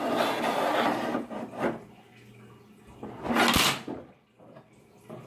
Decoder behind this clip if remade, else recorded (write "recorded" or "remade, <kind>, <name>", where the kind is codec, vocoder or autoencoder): recorded